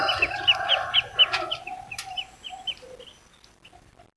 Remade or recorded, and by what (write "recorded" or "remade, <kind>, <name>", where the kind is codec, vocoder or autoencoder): recorded